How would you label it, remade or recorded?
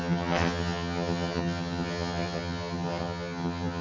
remade